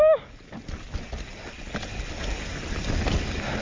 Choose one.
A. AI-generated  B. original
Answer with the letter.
B